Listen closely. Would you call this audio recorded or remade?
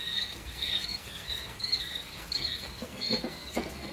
remade